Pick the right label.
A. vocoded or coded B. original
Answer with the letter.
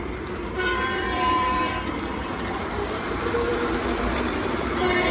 A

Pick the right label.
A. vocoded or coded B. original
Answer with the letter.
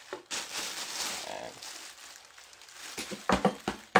B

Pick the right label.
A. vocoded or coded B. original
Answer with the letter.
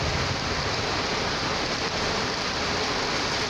A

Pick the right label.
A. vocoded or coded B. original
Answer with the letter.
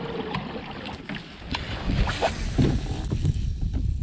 B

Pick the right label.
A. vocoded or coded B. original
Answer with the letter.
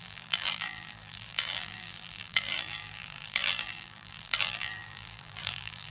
A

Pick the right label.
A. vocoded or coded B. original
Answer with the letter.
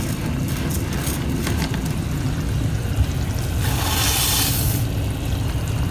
B